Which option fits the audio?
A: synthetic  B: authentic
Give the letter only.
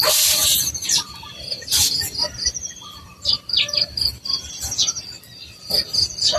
B